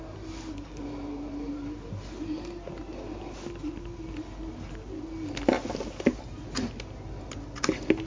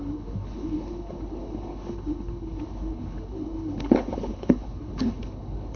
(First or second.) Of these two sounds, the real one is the first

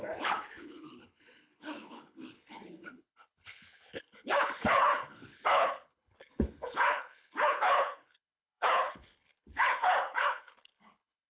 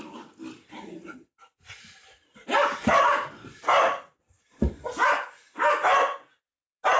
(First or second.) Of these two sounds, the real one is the second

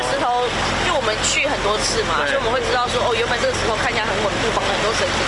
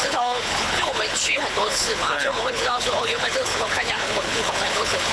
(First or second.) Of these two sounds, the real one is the first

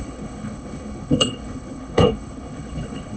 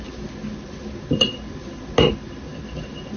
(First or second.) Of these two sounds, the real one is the second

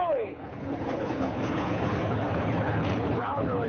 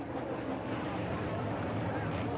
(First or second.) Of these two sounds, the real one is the second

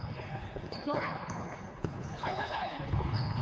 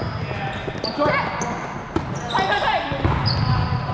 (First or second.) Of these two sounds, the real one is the second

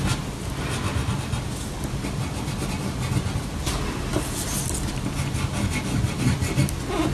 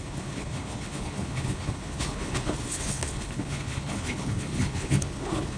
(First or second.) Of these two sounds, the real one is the first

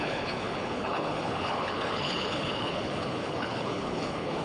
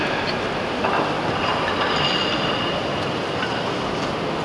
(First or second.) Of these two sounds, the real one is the second